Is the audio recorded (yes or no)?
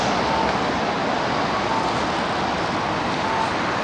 yes